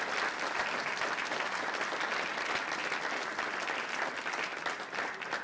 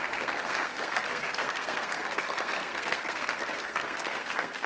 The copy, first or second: second